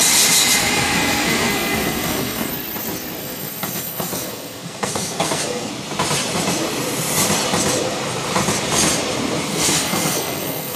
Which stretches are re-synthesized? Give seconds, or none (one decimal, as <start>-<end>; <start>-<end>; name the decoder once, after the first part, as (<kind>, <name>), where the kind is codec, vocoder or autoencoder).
0.6-2.5 (codec, SNAC); 3.2-5.7; 9.5-10.8